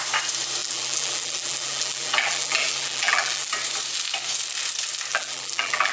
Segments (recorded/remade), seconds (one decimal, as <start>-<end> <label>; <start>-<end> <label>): 0.0-0.6 recorded; 0.6-3.5 remade; 3.5-5.1 recorded; 5.1-5.9 remade